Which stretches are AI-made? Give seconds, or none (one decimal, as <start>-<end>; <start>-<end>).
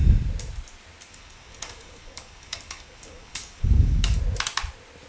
1.1-4.2